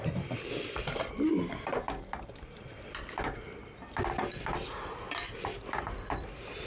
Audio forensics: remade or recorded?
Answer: remade